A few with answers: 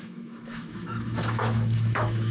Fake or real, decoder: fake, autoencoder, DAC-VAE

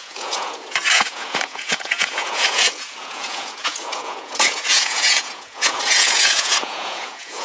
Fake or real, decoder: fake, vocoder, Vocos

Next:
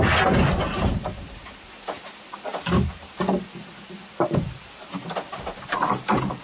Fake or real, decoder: real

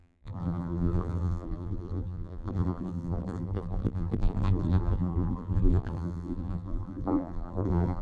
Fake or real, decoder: fake, vocoder, BigVGAN v2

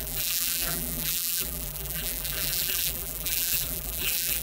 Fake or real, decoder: fake, vocoder, BigVGAN v2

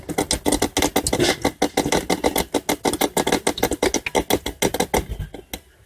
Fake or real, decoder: real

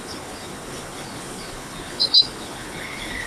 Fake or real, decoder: fake, codec, HILCodec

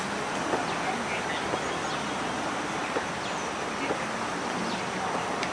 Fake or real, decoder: real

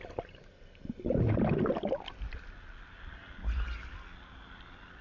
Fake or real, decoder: real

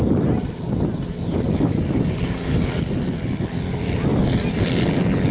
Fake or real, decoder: real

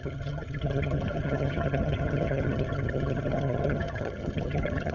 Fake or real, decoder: fake, vocoder, HiFi-GAN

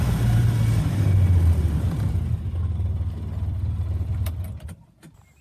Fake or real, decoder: real